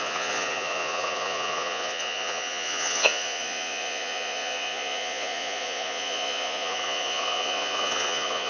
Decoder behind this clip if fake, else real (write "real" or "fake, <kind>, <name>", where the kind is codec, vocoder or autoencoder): fake, vocoder, Vocos